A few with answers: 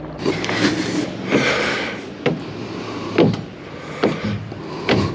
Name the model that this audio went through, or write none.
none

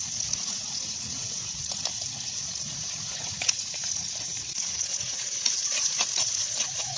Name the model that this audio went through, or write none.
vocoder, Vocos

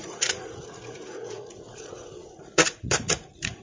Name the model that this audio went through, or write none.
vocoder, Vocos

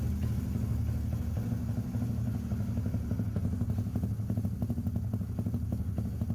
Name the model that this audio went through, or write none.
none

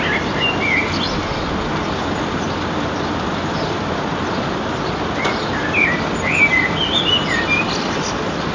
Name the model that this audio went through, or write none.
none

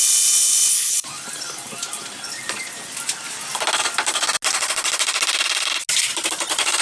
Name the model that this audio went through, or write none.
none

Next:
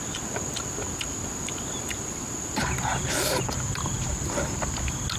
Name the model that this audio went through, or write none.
none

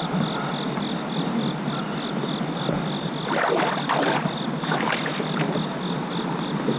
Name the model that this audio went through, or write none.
none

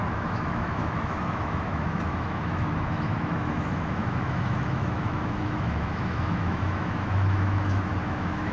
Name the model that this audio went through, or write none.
autoencoder, DAC-VAE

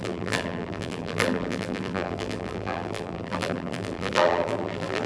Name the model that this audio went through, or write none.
vocoder, BigVGAN v2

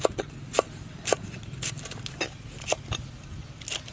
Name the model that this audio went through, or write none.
none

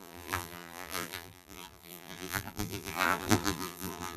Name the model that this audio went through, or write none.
vocoder, BigVGAN v2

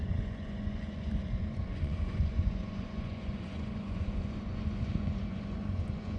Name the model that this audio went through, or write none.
vocoder, Vocos